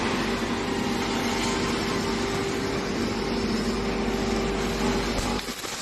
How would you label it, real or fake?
real